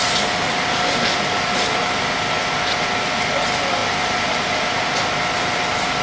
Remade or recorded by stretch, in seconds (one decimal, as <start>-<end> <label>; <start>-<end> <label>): 0.0-3.8 recorded; 3.8-4.7 remade; 4.7-6.0 recorded